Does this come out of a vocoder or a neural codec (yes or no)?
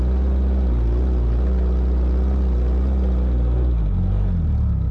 no